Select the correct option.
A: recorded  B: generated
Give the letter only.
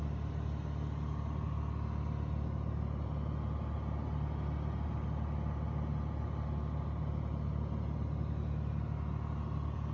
A